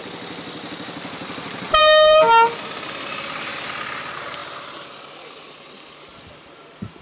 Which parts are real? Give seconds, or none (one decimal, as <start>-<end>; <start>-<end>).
0.0-7.0